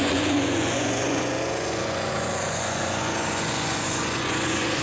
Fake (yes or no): yes